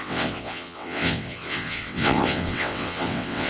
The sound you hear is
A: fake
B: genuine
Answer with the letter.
A